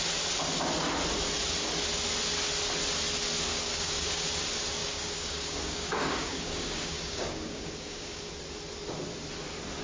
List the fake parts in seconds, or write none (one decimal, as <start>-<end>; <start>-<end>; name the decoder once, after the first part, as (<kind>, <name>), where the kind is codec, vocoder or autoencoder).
3.5-4.2 (codec, DAC); 4.8-8.3